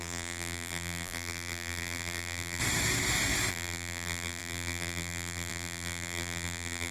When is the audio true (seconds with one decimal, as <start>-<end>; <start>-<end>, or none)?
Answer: 2.6-3.5